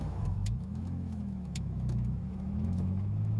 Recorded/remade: remade